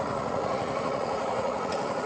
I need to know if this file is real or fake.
fake